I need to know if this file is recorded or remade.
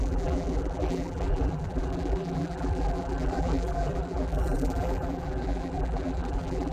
remade